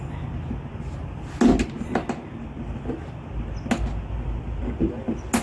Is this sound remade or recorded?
recorded